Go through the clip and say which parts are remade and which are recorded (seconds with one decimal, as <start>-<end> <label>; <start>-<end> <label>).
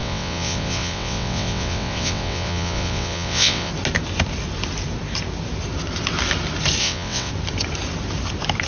0.0-3.7 remade; 3.7-6.8 recorded; 6.8-7.3 remade; 7.3-8.7 recorded